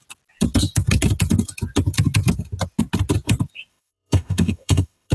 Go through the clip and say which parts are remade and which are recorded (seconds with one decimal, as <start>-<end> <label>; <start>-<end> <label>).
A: 0.0-3.7 recorded; 3.7-5.1 remade